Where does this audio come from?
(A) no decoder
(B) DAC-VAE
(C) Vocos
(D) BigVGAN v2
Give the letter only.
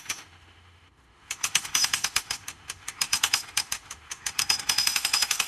B